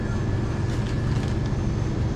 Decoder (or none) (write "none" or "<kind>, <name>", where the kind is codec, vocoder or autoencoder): none